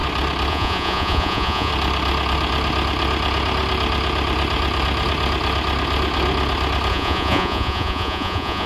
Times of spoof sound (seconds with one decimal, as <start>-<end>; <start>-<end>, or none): 0.5-1.7; 6.9-8.7